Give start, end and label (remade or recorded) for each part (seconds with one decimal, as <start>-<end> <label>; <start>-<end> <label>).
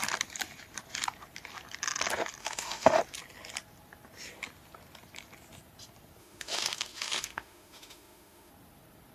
0.0-2.4 recorded; 2.4-3.0 remade; 3.0-6.2 recorded; 6.2-8.5 remade; 8.5-9.1 recorded